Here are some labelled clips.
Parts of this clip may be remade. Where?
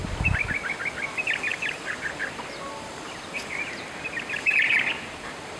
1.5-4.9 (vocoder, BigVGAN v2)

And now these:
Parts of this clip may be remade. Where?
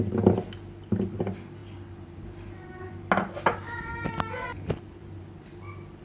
none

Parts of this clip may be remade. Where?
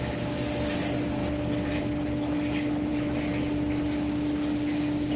none